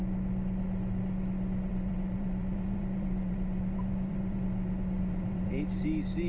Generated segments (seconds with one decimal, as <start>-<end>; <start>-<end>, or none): 1.7-5.5